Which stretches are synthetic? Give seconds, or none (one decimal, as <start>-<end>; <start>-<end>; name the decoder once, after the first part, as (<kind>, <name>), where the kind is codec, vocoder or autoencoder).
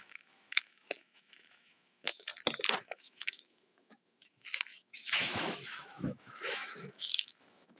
0.0-2.3 (autoencoder, DAC-VAE); 2.8-7.8